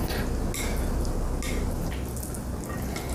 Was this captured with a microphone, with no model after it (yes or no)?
yes